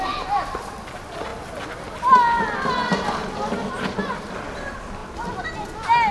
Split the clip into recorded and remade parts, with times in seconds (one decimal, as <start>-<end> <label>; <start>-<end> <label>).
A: 0.0-6.1 recorded